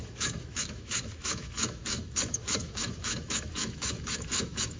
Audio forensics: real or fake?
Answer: fake